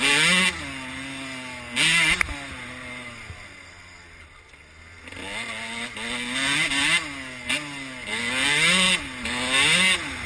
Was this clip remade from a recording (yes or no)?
no